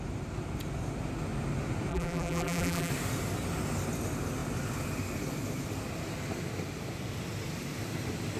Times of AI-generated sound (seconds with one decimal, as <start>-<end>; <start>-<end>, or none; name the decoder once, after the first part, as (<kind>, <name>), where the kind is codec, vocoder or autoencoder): 1.9-2.9 (vocoder, BigVGAN v2)